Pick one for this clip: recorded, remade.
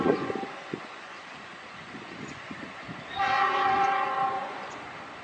remade